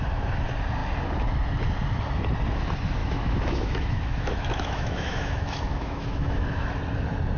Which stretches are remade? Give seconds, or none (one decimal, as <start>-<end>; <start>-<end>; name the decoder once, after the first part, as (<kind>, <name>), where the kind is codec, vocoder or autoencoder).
3.0-6.7 (autoencoder, DAC-VAE)